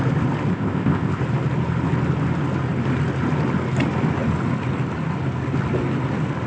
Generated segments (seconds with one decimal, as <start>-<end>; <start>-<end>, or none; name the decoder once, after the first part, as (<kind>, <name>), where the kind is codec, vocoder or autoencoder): 0.5-1.2 (codec, ZipCodec)